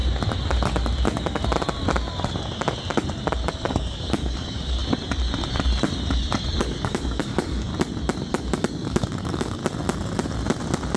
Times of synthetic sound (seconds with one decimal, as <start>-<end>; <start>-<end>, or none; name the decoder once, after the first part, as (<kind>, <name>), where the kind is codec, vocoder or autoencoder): 3.5-4.8 (codec, DAC); 6.6-7.7; 8.3-9.6